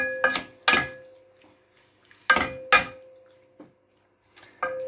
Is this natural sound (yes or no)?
yes